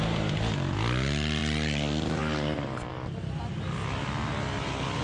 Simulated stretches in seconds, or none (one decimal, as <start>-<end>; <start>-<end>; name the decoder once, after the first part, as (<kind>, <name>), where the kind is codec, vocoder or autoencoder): none